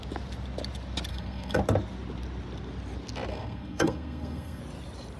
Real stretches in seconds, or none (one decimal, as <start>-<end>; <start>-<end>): 0.0-1.1; 1.6-3.3; 4.6-5.2